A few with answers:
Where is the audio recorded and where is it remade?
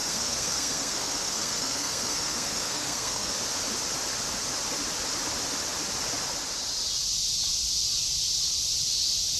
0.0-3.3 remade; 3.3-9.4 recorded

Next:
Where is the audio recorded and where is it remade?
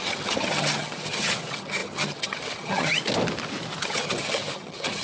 0.0-2.9 remade; 2.9-3.8 recorded; 3.8-5.0 remade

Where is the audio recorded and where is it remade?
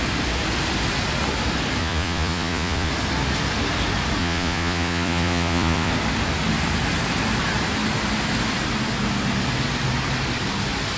0.0-1.8 recorded; 1.8-2.9 remade; 2.9-4.2 recorded; 4.2-5.9 remade; 5.9-11.0 recorded